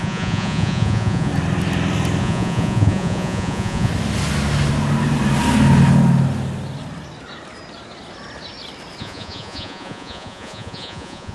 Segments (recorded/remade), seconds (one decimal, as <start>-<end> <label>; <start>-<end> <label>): 0.0-1.3 remade; 1.3-2.2 recorded; 2.2-3.9 remade; 3.9-9.0 recorded; 9.0-11.3 remade